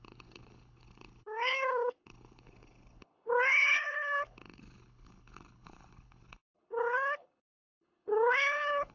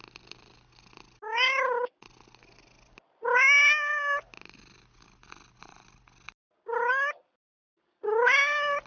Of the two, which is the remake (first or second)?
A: first